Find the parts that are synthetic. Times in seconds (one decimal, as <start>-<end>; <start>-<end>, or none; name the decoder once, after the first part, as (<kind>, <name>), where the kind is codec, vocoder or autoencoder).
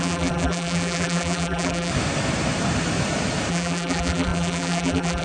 0.0-1.9 (vocoder, BigVGAN v2); 3.5-5.2